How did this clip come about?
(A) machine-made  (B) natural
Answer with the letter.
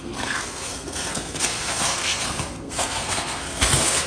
A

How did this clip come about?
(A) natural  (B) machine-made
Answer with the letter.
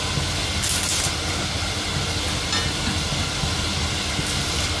A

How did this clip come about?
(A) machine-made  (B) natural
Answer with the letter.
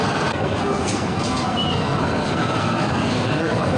A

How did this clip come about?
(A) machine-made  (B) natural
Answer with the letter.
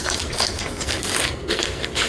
A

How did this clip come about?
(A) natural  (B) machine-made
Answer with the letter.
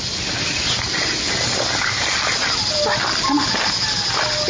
A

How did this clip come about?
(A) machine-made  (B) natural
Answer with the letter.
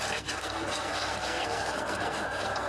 A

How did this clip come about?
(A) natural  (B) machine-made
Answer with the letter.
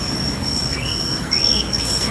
B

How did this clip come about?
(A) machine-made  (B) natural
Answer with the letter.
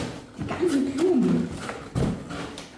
B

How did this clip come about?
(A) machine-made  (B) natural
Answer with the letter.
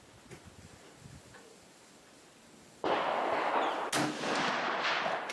B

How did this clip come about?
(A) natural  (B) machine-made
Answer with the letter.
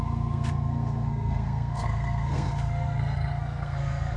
B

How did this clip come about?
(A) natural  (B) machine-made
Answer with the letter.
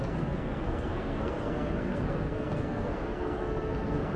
B